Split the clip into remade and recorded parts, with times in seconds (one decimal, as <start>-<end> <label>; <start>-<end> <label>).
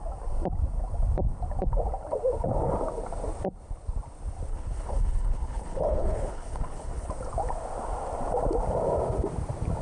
0.0-4.5 recorded; 4.5-7.1 remade; 7.1-9.8 recorded